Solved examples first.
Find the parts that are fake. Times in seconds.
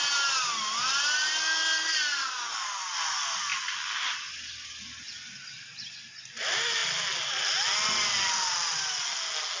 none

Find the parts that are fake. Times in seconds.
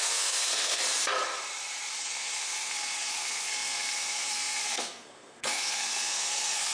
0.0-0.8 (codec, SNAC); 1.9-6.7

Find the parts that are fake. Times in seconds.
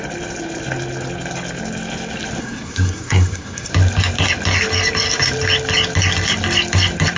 2.4-3.7 (codec, SNAC)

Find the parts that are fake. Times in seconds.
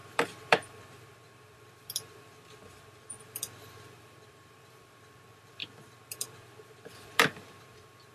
0.0-8.1 (vocoder, BigVGAN v2)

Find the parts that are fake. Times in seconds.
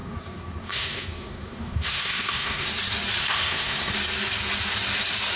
0.0-2.7 (codec, SNAC); 3.2-3.9